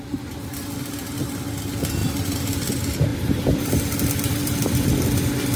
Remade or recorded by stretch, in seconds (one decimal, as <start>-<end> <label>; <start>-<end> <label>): 0.0-2.0 recorded; 2.0-2.7 remade; 2.7-3.1 recorded; 3.1-4.9 remade; 4.9-5.6 recorded